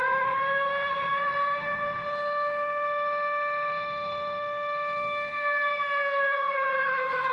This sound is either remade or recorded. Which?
remade